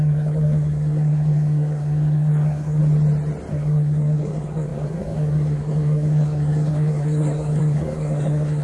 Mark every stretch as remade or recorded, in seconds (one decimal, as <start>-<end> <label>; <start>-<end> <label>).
0.0-2.8 remade; 2.8-3.5 recorded; 3.5-8.6 remade